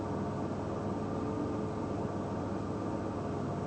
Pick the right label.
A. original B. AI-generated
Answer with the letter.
A